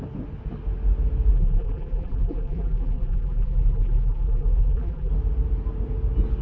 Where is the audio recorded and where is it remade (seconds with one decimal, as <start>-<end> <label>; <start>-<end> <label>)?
0.0-1.3 recorded; 1.3-5.1 remade; 5.1-6.4 recorded